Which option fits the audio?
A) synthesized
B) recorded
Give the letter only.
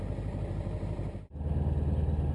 B